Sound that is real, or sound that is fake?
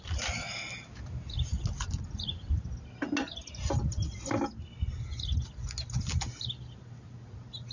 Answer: real